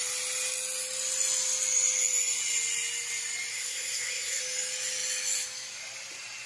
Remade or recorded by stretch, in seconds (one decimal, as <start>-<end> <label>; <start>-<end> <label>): 0.0-3.5 recorded; 3.5-4.4 remade; 4.4-6.5 recorded